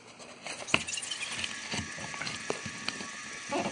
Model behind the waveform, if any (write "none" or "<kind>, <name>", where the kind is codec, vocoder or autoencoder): none